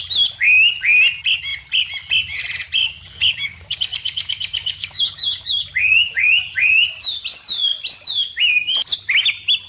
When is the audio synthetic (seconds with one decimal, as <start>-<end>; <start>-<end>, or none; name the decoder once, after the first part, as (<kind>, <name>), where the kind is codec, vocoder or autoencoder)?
2.8-6.3 (codec, DAC)